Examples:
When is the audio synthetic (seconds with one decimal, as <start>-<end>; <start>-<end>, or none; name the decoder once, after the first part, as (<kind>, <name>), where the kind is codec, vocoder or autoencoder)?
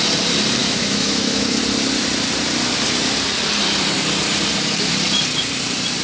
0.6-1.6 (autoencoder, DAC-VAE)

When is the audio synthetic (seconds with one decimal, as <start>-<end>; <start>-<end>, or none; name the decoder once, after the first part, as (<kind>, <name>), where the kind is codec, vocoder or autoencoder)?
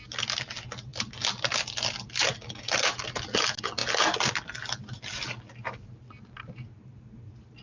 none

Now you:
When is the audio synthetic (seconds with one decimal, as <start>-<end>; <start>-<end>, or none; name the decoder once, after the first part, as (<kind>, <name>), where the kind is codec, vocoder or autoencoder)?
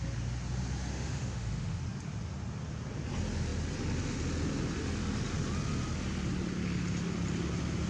0.9-1.8 (autoencoder, DAC-VAE)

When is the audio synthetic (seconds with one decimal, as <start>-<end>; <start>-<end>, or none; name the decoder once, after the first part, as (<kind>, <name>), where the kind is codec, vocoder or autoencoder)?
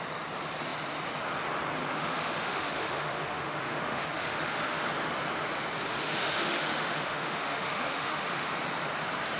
1.8-4.8 (autoencoder, DAC-VAE); 5.9-8.5